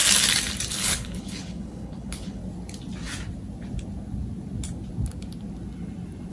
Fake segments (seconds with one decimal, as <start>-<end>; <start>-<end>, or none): 0.7-2.4

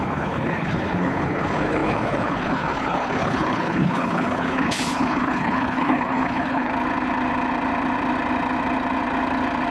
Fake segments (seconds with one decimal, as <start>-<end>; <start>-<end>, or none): 0.0-6.7

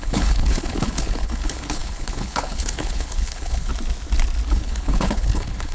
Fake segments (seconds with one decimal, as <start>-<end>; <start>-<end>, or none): 0.0-3.7; 4.5-5.7

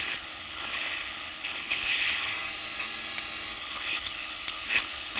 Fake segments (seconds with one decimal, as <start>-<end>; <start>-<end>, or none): 0.0-2.3; 3.6-5.2

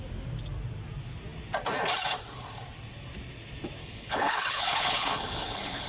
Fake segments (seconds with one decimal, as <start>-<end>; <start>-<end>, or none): 3.8-5.9